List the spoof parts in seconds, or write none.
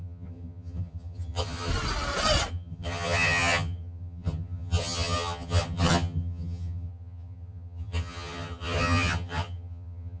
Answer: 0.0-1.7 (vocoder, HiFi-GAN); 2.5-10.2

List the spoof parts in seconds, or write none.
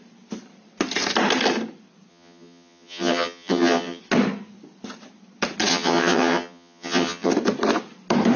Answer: 2.1-4.0 (vocoder, HiFi-GAN); 5.7-7.3